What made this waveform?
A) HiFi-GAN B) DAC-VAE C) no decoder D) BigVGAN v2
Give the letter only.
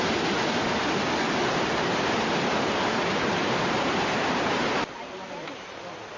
D